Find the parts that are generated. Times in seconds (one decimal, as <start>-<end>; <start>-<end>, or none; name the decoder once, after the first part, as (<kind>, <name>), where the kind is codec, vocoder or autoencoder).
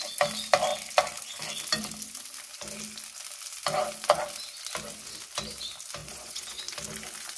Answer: 6.0-6.6 (vocoder, Vocos)